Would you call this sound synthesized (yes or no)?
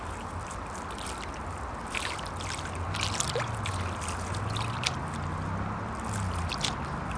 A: no